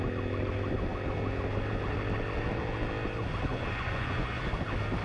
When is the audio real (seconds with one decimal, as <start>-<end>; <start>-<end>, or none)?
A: 0.0-3.5; 4.4-5.0